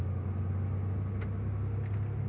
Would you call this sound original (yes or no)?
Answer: yes